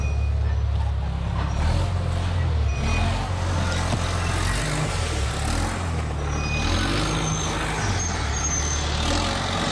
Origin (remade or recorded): recorded